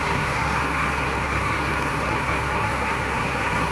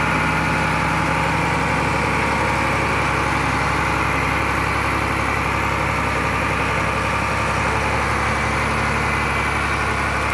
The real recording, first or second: second